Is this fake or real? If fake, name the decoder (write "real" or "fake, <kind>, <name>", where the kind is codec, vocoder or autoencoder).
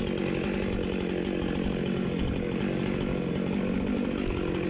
real